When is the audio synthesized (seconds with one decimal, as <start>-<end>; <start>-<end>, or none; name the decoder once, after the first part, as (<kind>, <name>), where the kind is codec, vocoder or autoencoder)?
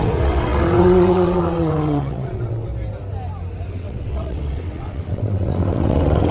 0.0-2.7 (vocoder, WaveNeXt); 3.7-6.3